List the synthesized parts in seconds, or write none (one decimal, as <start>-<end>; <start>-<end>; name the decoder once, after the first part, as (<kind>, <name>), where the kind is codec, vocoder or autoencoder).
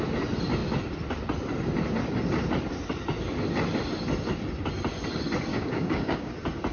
5.5-6.3 (codec, DAC)